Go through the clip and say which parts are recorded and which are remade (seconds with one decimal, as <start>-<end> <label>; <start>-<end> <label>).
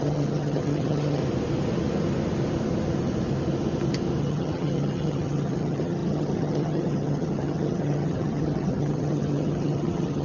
0.0-1.2 remade; 1.2-4.2 recorded; 4.2-10.2 remade